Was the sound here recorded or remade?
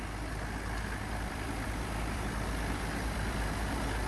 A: remade